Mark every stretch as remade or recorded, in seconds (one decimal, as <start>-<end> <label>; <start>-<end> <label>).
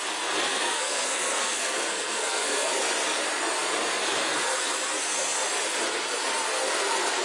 0.0-0.5 recorded; 0.5-2.7 remade; 2.7-7.2 recorded